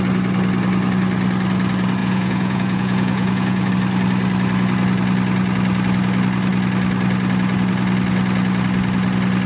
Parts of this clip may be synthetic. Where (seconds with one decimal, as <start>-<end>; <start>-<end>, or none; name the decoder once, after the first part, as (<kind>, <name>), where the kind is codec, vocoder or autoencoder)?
2.0-3.7 (vocoder, Vocos)